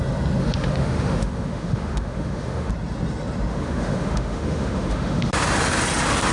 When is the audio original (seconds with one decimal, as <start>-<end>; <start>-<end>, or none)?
0.0-0.4; 2.7-3.5; 5.3-6.3